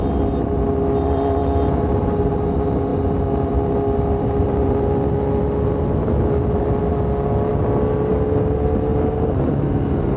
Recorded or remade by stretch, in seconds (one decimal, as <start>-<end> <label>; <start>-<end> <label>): 0.0-10.2 recorded